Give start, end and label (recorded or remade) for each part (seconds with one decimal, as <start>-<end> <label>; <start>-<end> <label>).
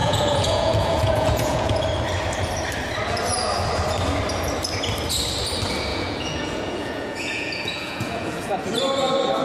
0.0-1.8 remade; 1.8-5.9 recorded; 5.9-8.5 remade; 8.5-9.4 recorded